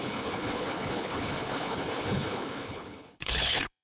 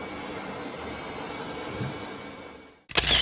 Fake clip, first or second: first